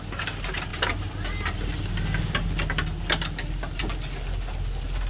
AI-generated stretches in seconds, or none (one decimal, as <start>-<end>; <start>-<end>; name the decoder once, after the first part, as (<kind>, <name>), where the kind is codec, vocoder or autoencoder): none